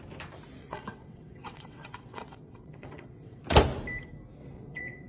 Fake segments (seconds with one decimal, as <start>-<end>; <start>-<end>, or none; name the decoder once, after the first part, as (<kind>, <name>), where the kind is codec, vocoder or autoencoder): 0.6-3.4 (vocoder, WaveNeXt); 4.4-5.1